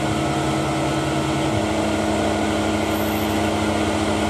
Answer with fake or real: real